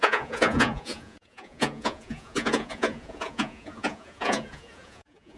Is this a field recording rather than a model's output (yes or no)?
no